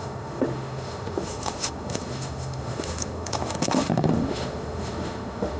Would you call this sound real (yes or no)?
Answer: no